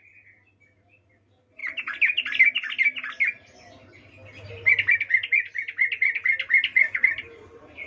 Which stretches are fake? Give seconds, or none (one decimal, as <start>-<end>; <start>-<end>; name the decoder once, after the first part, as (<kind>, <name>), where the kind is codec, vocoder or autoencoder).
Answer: none